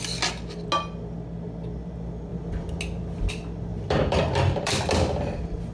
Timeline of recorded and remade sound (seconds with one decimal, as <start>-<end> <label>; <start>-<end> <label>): 0.0-3.7 recorded; 3.7-5.2 remade; 5.2-5.7 recorded